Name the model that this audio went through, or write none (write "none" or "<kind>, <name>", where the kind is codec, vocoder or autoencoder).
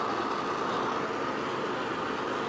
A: none